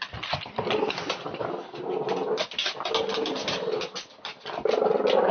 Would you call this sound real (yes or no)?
yes